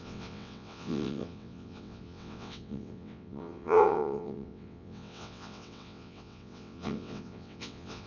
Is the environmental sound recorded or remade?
remade